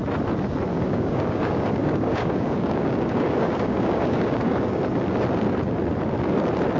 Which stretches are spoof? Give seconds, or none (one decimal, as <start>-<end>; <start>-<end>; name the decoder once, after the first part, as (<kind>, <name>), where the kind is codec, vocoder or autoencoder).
0.7-4.8 (codec, DAC)